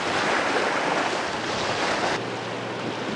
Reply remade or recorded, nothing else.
recorded